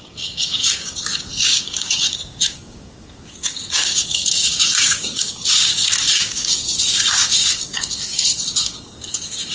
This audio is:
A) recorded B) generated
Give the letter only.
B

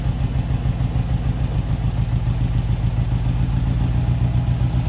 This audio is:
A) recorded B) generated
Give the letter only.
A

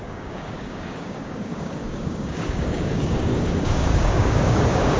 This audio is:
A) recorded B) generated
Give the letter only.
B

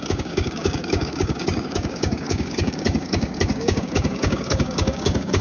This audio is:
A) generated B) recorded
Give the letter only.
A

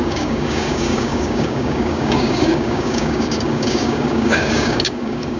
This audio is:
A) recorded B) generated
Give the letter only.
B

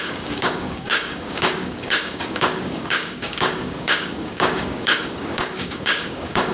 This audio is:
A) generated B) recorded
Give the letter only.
A